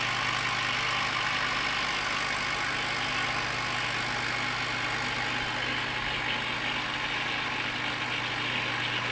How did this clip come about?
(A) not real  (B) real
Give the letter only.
B